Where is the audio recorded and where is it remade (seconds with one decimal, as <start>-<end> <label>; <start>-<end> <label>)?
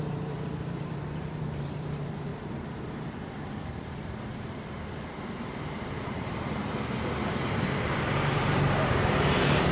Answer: 0.0-9.7 remade